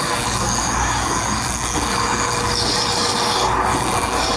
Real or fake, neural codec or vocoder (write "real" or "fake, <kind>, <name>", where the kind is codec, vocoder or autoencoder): fake, codec, DAC